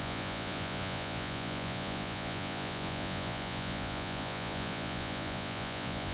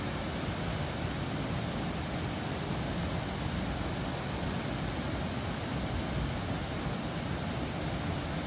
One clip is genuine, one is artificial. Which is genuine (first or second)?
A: second